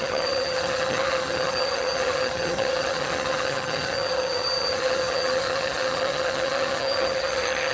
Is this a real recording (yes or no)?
no